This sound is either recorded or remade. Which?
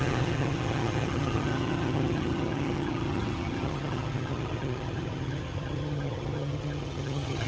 remade